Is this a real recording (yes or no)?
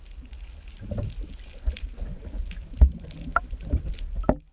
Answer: yes